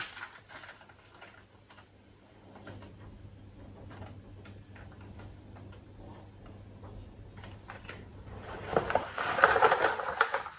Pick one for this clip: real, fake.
real